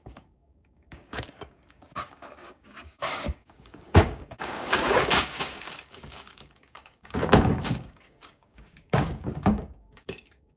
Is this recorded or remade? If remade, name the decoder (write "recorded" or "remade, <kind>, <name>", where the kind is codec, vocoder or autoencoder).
remade, codec, DAC